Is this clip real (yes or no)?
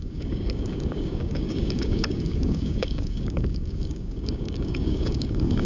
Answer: no